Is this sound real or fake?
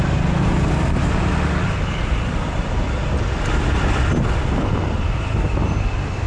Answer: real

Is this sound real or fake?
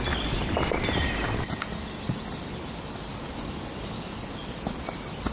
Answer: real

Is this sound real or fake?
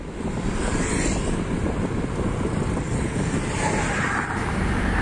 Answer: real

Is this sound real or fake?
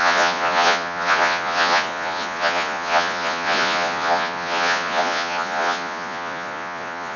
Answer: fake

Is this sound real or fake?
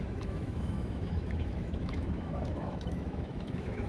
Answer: fake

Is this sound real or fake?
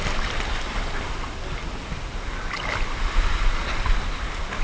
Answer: real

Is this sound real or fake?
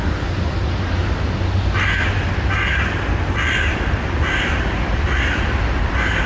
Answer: real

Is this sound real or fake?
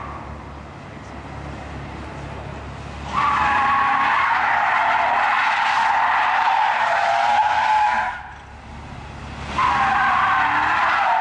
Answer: real